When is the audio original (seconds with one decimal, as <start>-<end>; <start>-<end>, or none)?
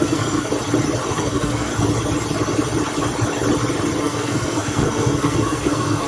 0.5-1.1; 1.7-4.0